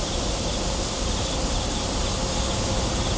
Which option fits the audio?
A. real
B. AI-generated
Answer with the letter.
A